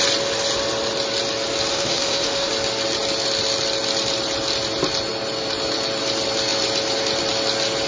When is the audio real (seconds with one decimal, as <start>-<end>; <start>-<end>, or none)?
0.0-1.7; 2.5-7.9

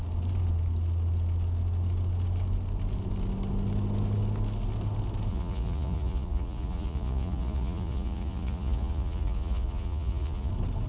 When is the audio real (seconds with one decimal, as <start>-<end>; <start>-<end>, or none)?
0.0-5.3; 10.5-10.9

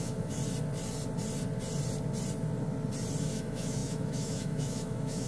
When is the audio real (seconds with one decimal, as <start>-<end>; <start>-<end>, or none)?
0.4-3.2

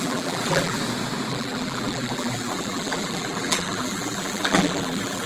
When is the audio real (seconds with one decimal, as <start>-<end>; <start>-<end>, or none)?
0.8-1.3

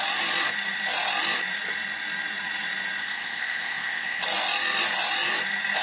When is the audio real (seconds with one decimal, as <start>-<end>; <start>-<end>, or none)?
0.0-3.0; 4.2-5.8

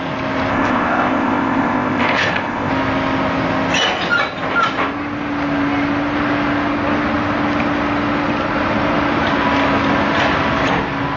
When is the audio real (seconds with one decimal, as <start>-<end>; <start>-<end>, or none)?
0.0-0.5; 2.7-11.2

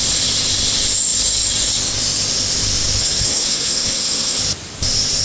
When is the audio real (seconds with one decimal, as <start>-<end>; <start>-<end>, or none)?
0.0-3.0; 4.4-5.2

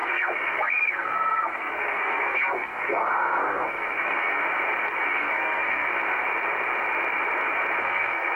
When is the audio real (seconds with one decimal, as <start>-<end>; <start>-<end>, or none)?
4.4-5.0; 5.9-7.8